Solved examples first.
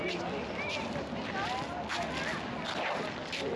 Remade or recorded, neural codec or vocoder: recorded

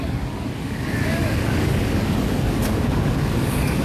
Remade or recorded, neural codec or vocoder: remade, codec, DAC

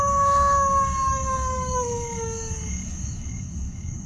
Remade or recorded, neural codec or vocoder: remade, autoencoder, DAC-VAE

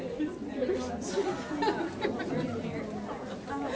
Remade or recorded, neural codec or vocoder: recorded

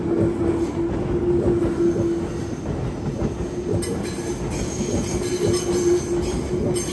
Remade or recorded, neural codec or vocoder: recorded